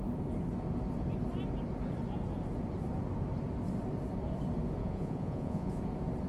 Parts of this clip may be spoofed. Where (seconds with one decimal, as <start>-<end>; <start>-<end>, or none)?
4.8-5.8